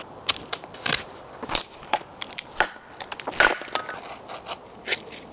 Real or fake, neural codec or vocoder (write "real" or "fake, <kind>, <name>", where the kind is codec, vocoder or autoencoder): fake, vocoder, BigVGAN v2